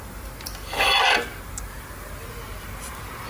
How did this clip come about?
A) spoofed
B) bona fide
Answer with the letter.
B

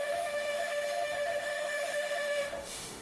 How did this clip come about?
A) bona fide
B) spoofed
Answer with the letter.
B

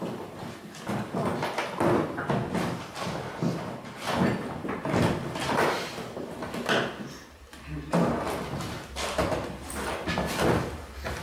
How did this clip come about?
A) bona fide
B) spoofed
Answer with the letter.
A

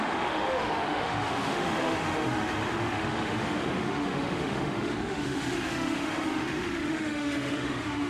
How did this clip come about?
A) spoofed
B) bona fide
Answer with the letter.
A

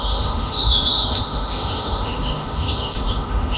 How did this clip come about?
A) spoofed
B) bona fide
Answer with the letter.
A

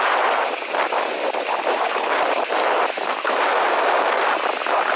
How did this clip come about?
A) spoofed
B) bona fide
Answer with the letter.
A